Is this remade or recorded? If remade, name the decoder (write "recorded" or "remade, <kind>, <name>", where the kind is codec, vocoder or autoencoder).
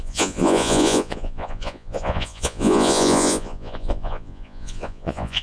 remade, vocoder, Vocos